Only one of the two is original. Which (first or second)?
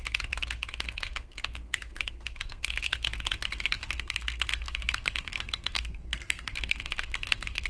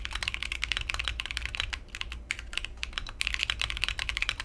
second